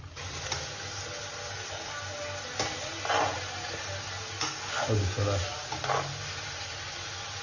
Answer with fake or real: real